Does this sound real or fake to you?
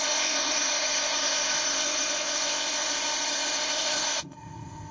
fake